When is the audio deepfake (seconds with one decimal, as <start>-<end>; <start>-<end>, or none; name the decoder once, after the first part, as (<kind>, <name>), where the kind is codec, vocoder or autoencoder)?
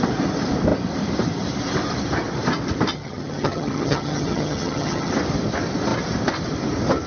2.9-5.1 (vocoder, HiFi-GAN)